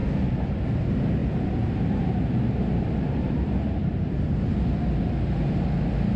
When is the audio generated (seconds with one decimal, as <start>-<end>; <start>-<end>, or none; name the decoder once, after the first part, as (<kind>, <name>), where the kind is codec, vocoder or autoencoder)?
1.2-4.5 (vocoder, BigVGAN v2)